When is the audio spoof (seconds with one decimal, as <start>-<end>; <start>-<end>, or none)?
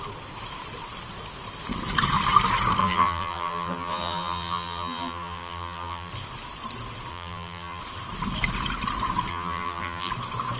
2.8-6.1; 7.1-7.8; 9.3-10.1